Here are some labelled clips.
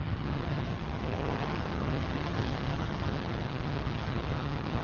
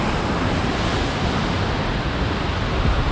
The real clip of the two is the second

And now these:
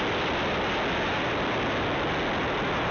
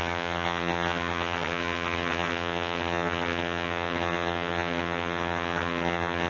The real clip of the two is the first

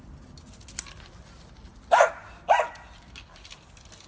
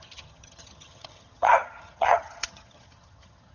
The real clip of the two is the first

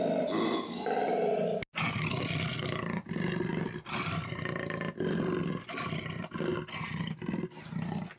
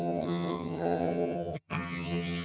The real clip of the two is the first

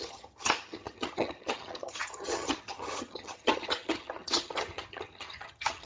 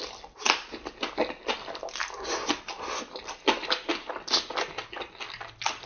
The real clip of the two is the second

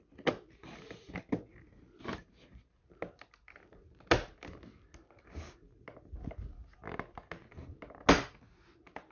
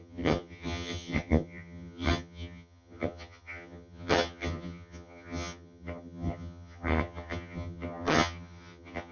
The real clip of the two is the first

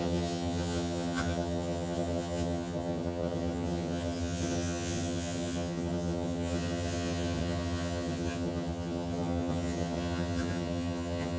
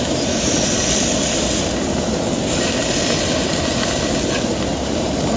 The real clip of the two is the second